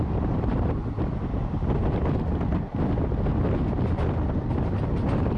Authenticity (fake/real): real